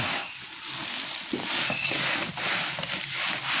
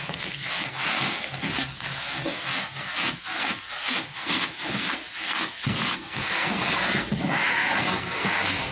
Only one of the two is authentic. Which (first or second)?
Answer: first